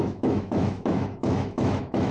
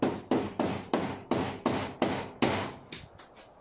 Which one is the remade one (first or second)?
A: first